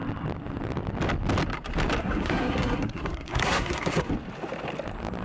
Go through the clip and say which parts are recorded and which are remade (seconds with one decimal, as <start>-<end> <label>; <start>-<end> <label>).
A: 0.0-2.0 recorded; 2.0-4.1 remade; 4.1-5.2 recorded